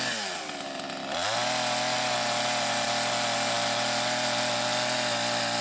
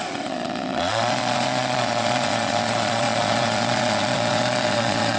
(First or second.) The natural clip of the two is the first